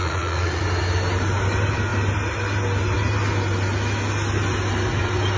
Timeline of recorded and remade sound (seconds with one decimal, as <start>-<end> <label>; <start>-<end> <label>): 0.0-0.6 remade; 0.6-5.4 recorded